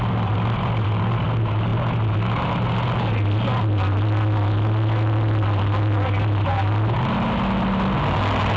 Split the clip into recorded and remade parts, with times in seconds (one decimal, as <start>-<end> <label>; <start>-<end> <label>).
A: 0.0-8.6 recorded